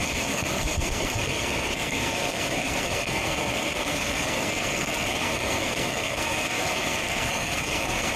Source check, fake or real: fake